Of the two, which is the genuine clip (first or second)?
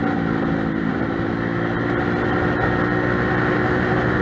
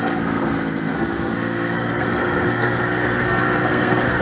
first